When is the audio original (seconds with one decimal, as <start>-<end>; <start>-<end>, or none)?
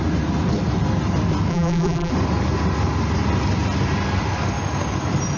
0.0-1.5; 2.1-5.4